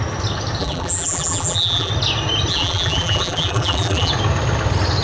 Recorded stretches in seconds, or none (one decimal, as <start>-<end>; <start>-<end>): 0.0-0.6; 1.9-2.5; 4.1-5.0